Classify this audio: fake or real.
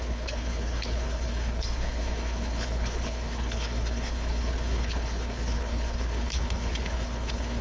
fake